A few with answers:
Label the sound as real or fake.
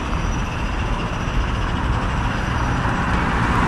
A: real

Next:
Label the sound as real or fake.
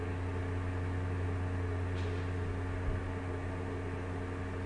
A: real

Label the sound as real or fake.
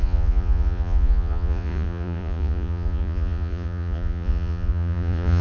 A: fake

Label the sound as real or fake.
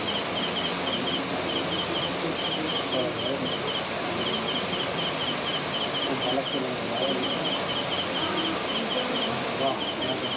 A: real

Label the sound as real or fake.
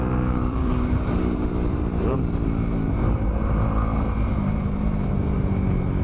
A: fake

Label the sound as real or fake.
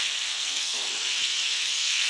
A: fake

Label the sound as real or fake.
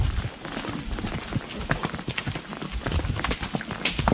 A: real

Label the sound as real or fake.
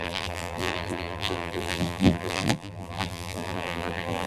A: fake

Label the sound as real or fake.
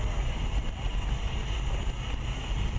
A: real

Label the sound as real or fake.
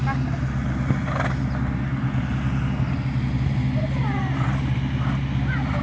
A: real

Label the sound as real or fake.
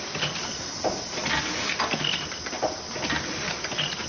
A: real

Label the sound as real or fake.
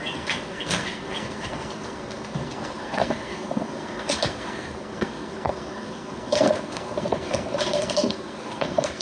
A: fake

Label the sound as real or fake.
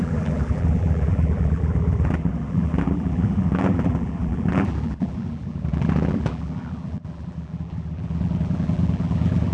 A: fake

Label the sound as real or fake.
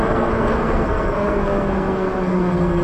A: fake